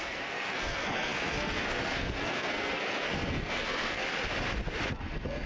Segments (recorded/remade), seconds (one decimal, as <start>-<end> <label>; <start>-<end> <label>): 0.0-4.0 remade; 4.0-4.9 recorded; 4.9-5.5 remade